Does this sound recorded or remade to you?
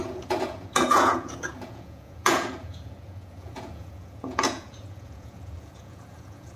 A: remade